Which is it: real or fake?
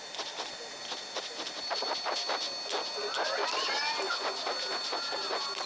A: real